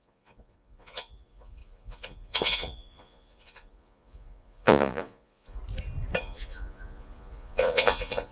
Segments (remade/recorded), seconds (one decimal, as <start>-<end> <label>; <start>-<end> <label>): 0.0-5.6 remade; 5.6-6.2 recorded; 6.2-8.3 remade